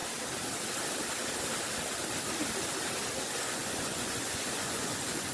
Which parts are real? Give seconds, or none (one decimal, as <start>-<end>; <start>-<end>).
0.0-3.2